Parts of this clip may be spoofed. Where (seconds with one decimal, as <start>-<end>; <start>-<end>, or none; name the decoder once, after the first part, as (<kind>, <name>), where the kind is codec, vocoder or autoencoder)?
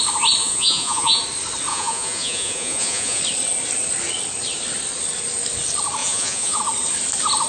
0.4-1.2 (vocoder, Vocos); 1.7-3.2; 6.0-6.6